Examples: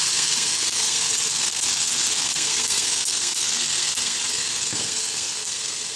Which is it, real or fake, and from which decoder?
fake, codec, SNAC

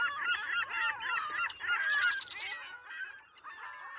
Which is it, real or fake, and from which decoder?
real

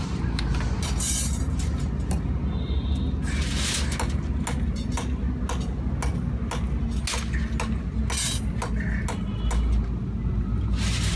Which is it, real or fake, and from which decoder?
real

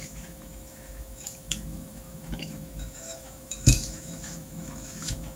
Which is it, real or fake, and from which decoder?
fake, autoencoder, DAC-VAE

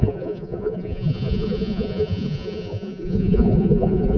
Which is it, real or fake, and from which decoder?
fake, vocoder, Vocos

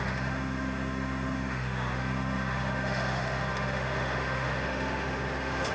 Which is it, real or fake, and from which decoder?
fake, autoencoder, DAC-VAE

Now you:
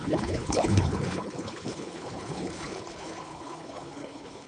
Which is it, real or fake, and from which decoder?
fake, codec, HILCodec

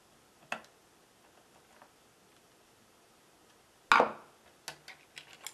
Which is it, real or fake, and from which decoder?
real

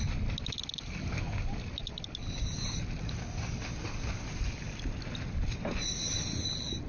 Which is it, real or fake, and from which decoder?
real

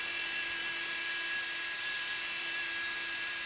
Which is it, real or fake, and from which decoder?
real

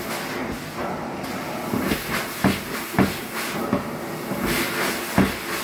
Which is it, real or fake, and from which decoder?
real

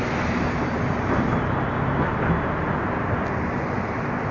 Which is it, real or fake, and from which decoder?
real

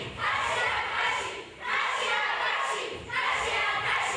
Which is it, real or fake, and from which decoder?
fake, vocoder, BigVGAN v2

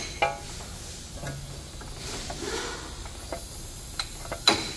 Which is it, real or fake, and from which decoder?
real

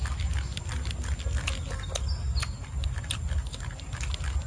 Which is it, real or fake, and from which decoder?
real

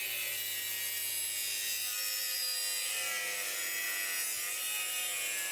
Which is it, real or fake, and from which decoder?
real